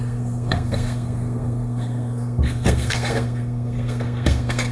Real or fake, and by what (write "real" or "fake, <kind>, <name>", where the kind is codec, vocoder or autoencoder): fake, codec, SNAC